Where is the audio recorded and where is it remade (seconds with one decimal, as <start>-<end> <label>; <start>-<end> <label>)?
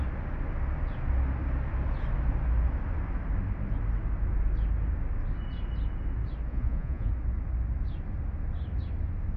0.0-6.5 recorded; 6.5-7.1 remade; 7.1-9.4 recorded